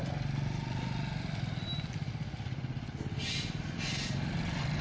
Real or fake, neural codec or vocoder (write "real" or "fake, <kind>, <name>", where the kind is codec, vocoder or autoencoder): real